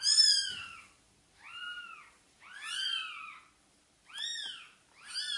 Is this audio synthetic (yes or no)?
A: yes